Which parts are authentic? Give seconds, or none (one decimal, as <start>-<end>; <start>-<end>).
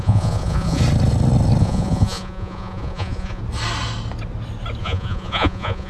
0.8-1.6; 3.4-4.8